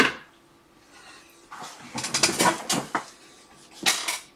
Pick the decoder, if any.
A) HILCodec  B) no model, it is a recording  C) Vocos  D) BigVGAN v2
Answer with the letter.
B